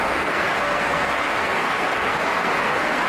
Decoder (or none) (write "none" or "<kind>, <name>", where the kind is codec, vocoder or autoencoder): codec, SNAC